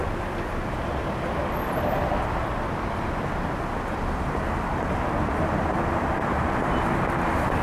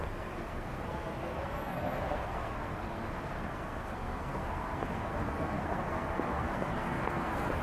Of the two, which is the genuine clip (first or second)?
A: first